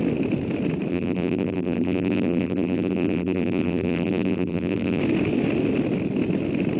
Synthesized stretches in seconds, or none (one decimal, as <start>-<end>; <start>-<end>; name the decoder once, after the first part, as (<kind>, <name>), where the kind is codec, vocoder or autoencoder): 0.9-5.0 (vocoder, BigVGAN v2)